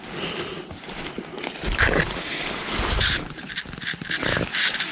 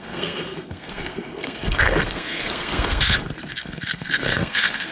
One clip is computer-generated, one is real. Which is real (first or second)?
first